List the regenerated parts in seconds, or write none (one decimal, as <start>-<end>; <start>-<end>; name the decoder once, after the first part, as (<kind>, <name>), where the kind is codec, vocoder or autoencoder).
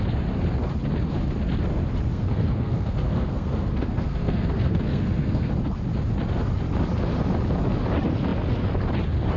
2.1-5.5 (codec, SNAC)